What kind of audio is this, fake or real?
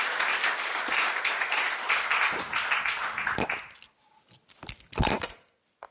real